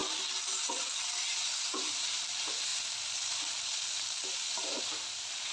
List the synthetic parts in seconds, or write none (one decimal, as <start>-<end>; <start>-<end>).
1.4-2.1